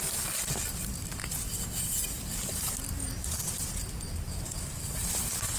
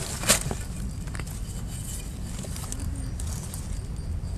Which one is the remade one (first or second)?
first